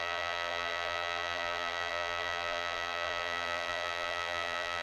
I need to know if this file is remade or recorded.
remade